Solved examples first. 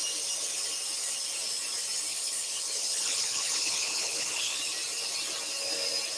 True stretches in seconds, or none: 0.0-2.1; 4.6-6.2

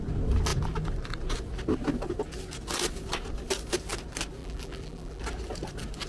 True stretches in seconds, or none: 0.0-4.4; 5.2-6.1

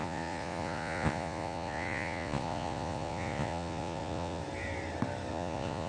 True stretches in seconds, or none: 4.4-5.3